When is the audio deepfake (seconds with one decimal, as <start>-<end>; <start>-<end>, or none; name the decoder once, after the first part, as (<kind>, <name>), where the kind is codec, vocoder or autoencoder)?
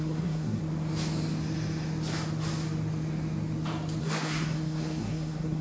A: 0.0-0.6 (codec, SNAC); 4.0-5.6